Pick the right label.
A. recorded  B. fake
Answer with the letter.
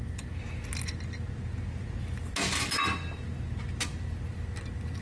A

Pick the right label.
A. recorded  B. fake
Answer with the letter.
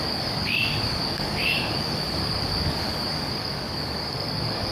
B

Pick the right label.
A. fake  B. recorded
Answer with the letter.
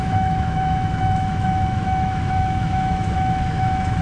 A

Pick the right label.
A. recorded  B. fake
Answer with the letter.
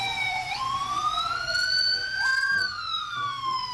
B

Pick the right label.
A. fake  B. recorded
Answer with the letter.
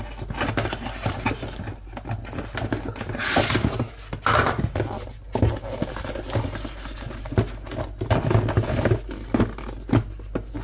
B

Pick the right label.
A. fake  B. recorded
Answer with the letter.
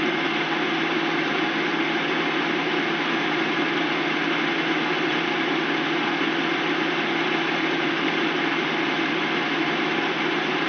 A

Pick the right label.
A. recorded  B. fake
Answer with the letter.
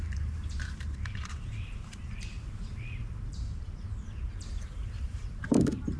B